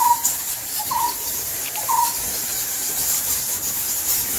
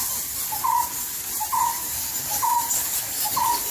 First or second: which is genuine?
second